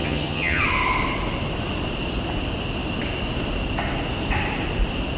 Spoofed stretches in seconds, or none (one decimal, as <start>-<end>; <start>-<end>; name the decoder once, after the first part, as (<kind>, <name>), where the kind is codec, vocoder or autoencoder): 0.0-0.6 (vocoder, HiFi-GAN)